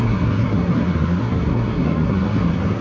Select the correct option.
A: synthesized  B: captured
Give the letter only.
A